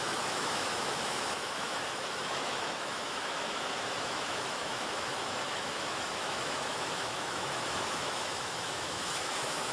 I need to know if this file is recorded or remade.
remade